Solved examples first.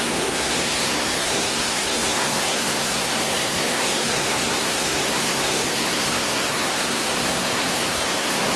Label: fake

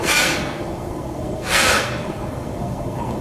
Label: fake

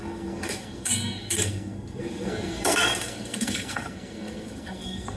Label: fake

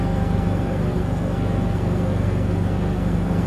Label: fake